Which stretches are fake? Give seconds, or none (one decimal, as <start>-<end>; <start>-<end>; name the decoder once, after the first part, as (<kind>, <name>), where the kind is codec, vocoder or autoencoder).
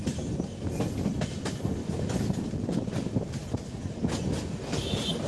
1.8-2.5 (vocoder, BigVGAN v2)